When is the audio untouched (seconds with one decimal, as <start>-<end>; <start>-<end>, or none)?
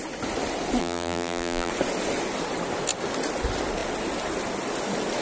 0.0-0.8; 1.7-5.2